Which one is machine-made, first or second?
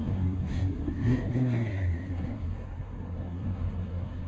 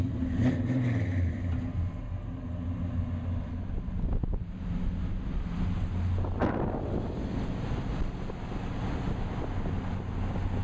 first